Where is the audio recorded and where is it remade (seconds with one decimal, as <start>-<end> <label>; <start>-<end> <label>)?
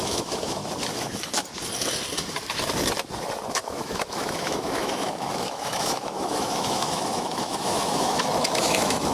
0.0-0.6 remade; 0.6-3.5 recorded; 3.5-9.1 remade